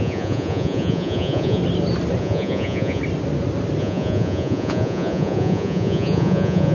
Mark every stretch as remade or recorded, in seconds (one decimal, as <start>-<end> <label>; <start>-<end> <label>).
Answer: 0.0-1.6 remade; 1.6-2.2 recorded; 2.2-3.0 remade; 3.0-3.8 recorded; 3.8-6.7 remade